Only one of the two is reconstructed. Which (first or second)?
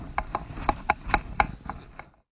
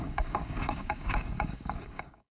second